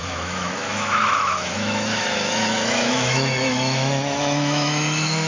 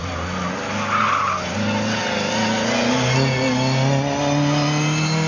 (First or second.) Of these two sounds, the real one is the second